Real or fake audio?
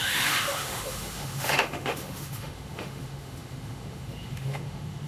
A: fake